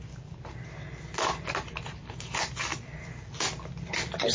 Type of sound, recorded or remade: recorded